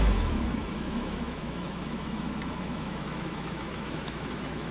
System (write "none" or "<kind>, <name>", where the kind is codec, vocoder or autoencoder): autoencoder, DAC-VAE